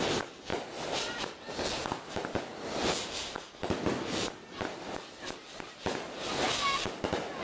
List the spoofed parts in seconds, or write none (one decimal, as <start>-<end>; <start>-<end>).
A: none